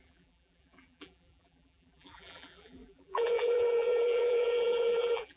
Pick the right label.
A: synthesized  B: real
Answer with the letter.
A